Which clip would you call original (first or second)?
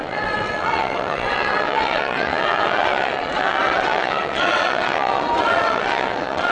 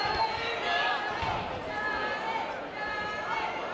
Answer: second